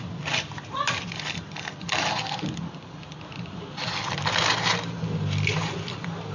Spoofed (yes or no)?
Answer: no